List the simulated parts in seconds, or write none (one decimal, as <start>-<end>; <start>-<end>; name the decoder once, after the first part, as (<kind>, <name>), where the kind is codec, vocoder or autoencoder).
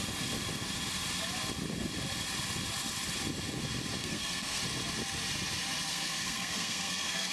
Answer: 4.0-4.6 (codec, SNAC); 5.9-7.3